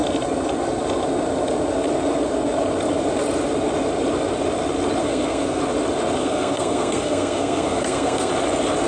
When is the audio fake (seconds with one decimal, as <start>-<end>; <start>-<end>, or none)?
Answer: 5.0-5.6; 6.2-8.3